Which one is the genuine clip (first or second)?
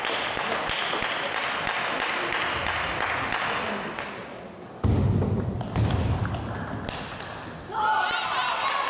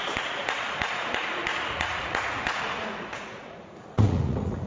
first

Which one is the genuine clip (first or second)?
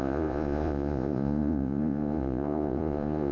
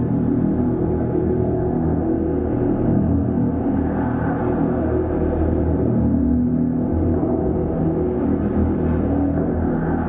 second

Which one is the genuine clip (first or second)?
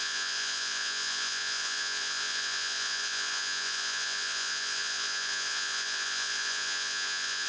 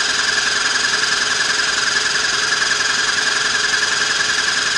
second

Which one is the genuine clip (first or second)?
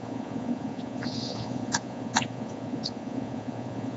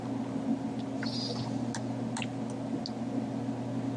second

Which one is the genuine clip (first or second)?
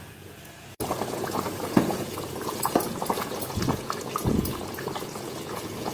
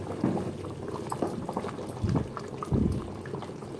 second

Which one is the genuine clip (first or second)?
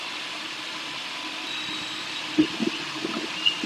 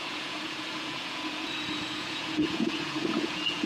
first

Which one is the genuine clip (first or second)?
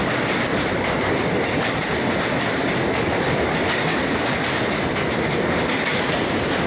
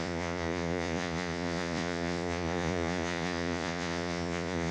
first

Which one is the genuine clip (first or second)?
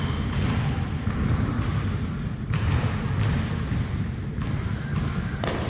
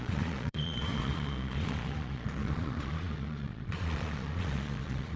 first